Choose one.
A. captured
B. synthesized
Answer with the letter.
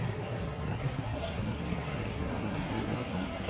B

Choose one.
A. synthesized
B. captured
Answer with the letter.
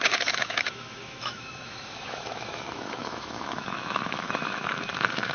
A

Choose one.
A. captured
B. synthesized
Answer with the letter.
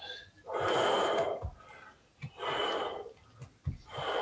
A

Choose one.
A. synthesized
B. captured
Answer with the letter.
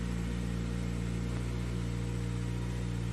B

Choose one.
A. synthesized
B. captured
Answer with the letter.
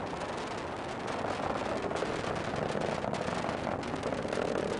B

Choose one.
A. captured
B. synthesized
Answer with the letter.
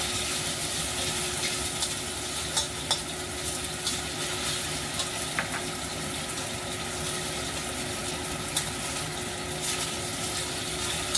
A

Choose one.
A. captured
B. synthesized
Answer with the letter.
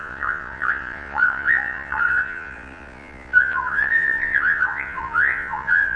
B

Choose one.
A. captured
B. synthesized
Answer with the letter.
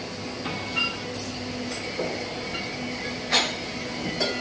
A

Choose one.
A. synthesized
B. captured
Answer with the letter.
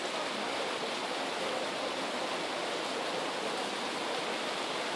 A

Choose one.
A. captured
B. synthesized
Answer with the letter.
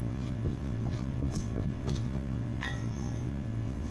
B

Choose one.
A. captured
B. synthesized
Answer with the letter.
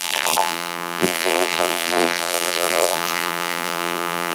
B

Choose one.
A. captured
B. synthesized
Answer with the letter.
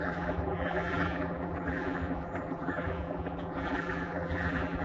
B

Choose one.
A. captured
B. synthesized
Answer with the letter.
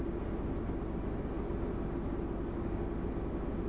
A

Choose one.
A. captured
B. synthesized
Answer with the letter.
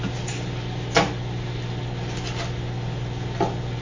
A